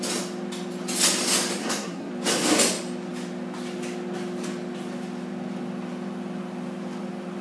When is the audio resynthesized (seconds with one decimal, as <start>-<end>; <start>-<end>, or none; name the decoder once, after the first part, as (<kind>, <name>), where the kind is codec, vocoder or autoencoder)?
1.6-2.1 (codec, SNAC)